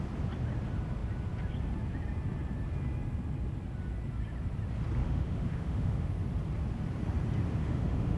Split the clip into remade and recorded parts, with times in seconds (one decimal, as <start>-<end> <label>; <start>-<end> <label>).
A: 0.0-5.0 recorded; 5.0-6.1 remade; 6.1-7.6 recorded; 7.6-8.2 remade